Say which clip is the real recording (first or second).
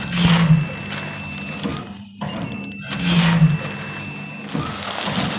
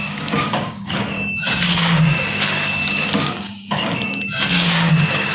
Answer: first